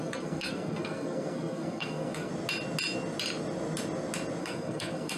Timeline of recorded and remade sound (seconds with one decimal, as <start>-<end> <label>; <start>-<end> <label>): 0.0-2.3 remade; 2.3-4.4 recorded; 4.4-5.2 remade